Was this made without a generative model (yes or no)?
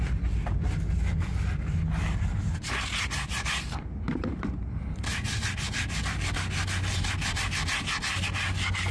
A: yes